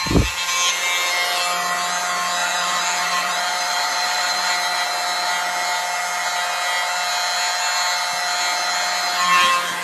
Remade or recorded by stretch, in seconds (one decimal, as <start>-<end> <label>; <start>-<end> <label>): 0.0-2.4 recorded; 2.4-4.5 remade; 4.5-9.8 recorded